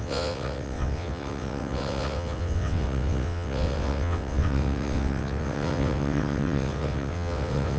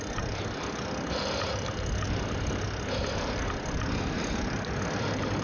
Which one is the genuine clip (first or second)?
second